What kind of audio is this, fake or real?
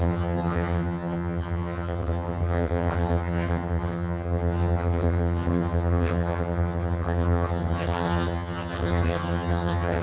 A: fake